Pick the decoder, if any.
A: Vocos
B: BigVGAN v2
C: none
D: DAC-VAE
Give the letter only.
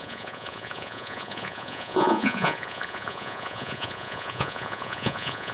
A